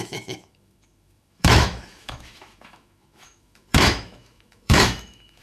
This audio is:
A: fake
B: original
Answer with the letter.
A